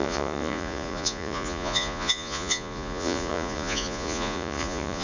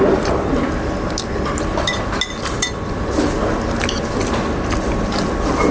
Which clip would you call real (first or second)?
second